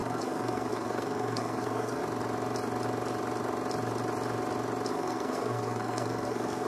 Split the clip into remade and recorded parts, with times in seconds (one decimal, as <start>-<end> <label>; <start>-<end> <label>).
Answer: 0.0-2.0 remade; 2.0-4.9 recorded; 4.9-6.7 remade